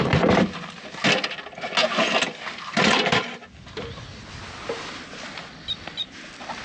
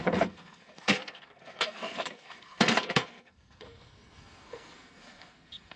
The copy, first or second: second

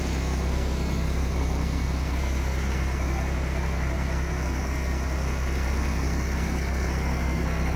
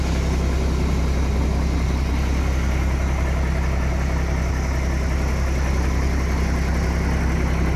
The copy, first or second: first